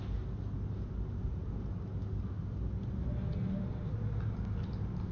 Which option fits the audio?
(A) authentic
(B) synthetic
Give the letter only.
A